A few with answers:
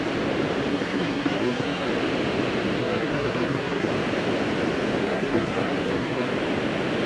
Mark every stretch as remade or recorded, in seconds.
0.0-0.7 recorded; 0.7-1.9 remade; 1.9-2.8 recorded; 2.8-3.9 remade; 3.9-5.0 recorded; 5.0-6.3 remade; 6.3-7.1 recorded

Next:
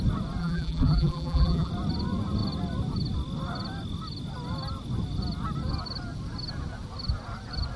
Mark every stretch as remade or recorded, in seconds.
0.0-0.4 recorded; 0.4-1.7 remade; 1.7-7.8 recorded